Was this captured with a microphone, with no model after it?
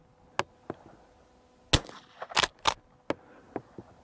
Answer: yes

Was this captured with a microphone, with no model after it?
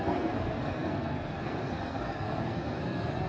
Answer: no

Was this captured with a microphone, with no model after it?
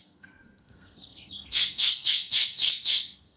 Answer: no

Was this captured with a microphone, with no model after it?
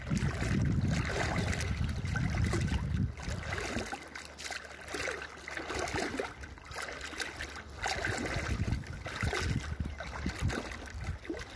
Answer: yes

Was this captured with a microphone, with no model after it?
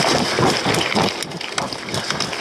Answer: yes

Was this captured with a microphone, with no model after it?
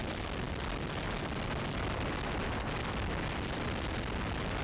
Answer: yes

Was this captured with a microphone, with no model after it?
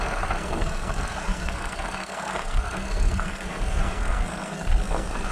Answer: no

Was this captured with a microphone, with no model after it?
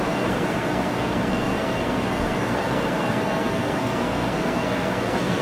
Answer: no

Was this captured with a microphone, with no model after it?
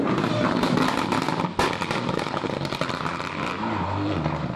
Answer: yes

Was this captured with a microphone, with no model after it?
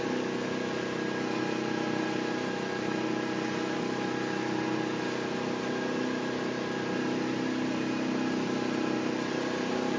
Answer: yes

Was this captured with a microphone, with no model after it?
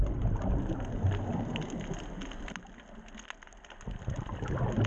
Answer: yes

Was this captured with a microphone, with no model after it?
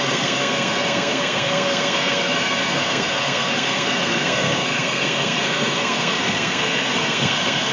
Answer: no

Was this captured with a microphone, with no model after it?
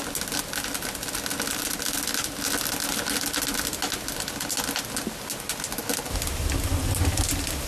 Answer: yes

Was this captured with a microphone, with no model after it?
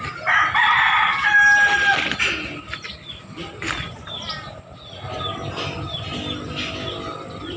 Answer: yes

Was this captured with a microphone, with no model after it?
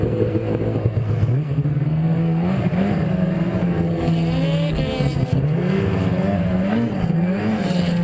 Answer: no